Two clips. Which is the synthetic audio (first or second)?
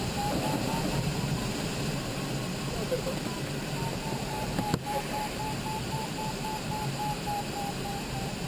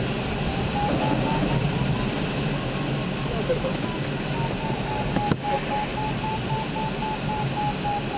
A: first